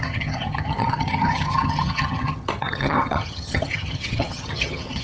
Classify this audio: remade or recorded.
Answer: remade